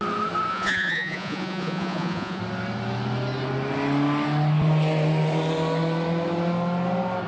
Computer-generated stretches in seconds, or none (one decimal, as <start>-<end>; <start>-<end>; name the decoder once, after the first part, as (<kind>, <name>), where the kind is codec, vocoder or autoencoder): 0.5-2.4 (vocoder, Vocos)